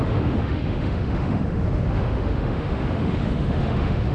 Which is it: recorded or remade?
remade